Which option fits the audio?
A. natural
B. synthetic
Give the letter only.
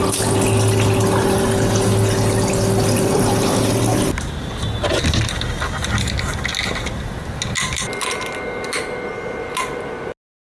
A